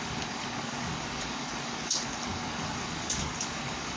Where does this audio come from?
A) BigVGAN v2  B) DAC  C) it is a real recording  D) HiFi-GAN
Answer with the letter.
B